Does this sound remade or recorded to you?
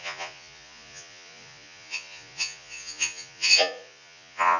remade